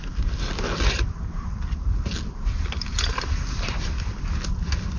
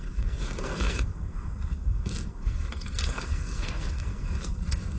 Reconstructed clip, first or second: second